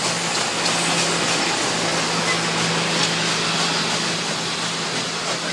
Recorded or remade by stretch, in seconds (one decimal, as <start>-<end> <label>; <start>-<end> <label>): 0.0-5.5 recorded